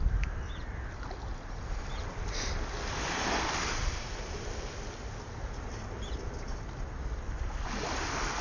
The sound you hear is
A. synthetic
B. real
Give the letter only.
B